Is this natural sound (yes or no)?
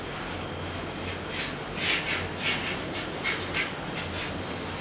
yes